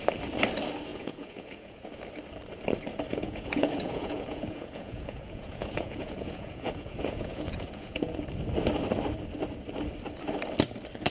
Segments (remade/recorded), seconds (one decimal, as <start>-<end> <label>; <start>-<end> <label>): 0.0-0.9 recorded; 0.9-1.9 remade; 1.9-3.1 recorded; 3.1-8.2 remade; 8.2-11.1 recorded